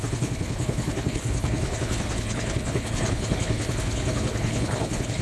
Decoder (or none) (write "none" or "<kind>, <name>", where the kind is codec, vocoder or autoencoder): codec, HILCodec